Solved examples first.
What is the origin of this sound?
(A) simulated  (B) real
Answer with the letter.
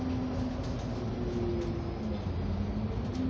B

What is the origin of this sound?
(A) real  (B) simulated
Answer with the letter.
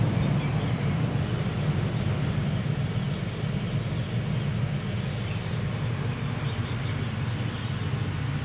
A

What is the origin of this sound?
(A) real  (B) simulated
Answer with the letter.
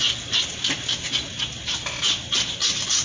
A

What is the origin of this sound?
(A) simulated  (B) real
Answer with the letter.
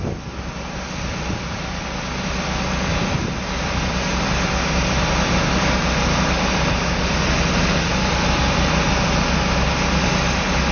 B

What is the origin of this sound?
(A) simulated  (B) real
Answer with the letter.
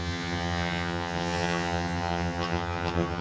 A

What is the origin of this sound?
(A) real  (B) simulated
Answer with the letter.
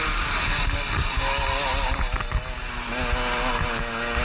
A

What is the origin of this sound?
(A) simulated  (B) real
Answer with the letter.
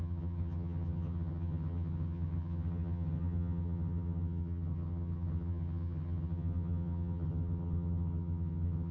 A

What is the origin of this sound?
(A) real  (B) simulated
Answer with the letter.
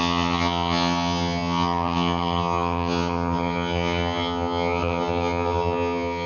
B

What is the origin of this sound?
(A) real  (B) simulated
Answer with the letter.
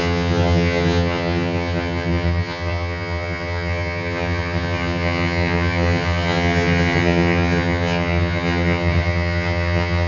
B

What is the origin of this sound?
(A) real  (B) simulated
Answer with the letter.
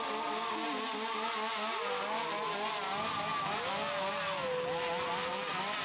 A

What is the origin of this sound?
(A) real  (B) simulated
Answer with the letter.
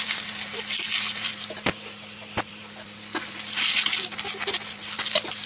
A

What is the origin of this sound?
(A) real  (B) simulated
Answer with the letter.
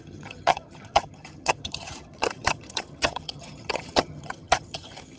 B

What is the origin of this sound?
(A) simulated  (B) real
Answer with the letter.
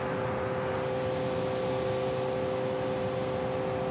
B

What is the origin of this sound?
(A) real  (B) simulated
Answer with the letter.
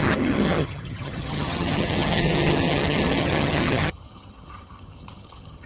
B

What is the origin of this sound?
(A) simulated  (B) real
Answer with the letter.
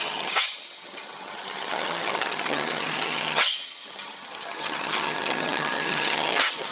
A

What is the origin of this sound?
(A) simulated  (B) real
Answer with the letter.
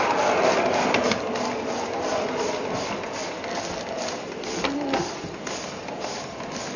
B